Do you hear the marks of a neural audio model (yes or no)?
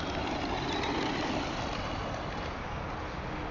no